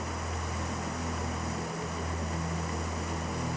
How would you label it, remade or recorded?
recorded